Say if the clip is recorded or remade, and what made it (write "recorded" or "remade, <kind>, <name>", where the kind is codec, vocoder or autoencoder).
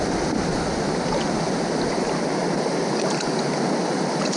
recorded